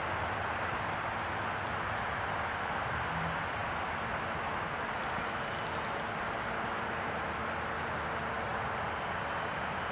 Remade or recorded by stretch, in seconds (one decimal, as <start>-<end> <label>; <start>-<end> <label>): 0.0-9.9 recorded